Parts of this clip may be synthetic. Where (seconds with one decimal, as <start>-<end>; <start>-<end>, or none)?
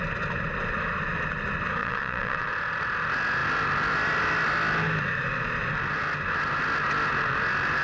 1.8-2.5